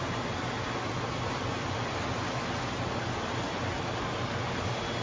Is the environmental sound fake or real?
real